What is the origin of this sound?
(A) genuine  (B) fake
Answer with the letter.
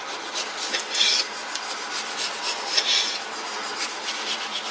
A